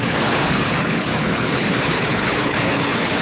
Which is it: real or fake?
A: fake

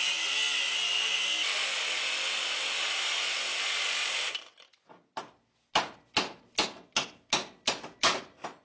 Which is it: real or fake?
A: real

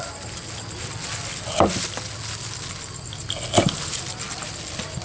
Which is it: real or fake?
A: real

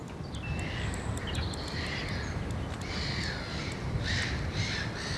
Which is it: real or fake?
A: real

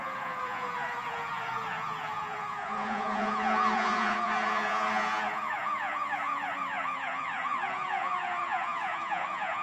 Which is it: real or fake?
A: fake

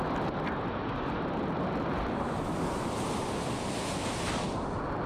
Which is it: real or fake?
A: real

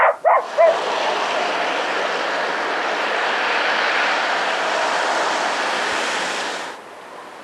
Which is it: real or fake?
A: real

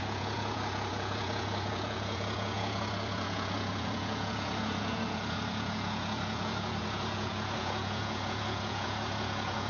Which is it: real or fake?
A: fake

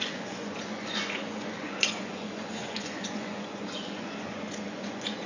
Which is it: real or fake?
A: fake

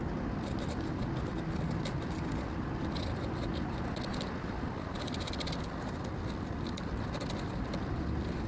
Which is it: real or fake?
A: real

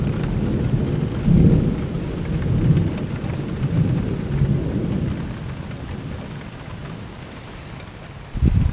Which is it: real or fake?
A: real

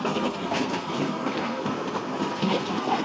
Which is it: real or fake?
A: fake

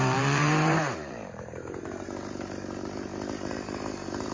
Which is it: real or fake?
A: fake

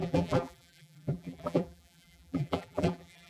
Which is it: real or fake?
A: fake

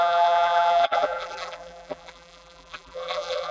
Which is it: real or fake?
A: fake